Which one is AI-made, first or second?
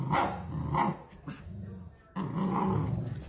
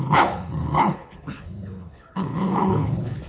second